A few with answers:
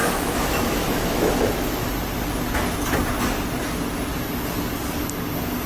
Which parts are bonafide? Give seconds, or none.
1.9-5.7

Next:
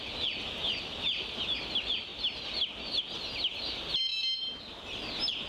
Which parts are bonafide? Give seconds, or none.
0.0-5.5

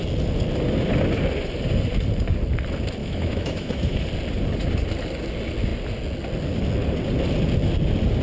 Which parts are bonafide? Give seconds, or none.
0.0-3.0; 4.0-8.2